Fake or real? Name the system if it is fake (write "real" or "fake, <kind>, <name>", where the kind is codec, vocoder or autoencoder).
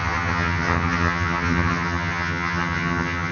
fake, vocoder, HiFi-GAN